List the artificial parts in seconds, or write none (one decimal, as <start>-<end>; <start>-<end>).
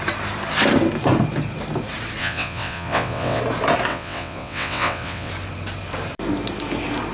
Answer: 2.2-3.4; 3.9-5.3